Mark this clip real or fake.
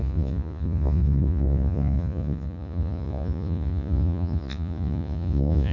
fake